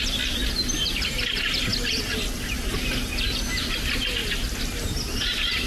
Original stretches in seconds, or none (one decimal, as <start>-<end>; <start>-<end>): 0.0-5.7